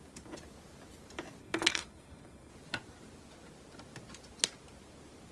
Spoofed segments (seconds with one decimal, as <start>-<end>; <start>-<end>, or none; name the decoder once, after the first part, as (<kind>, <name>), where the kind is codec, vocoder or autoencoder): 1.4-2.5 (codec, SNAC)